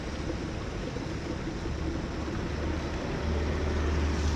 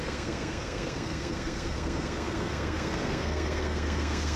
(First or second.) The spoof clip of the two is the second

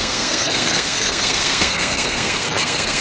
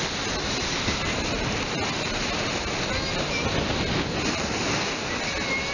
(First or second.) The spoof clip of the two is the first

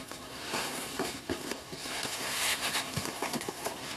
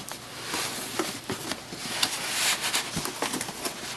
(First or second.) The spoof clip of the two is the first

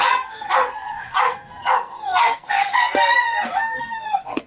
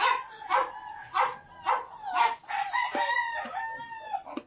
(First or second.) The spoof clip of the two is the first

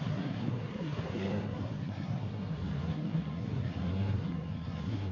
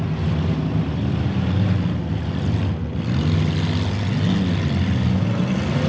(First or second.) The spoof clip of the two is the first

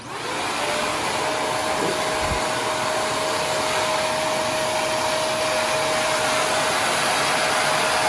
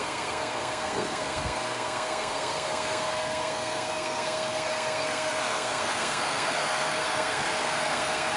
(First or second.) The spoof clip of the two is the second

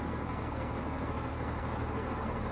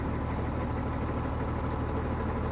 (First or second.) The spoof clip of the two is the first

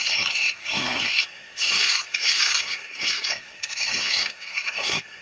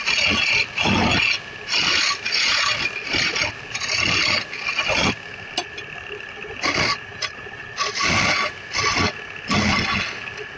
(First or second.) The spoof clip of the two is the first